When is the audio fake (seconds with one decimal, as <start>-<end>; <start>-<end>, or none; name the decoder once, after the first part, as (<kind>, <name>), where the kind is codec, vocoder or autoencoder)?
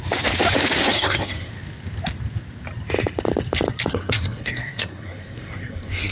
0.8-1.5 (codec, SNAC); 3.9-6.1